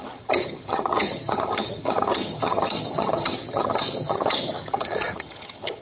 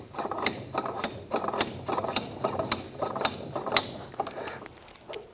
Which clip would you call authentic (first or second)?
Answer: second